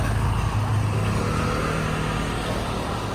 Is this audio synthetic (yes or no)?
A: no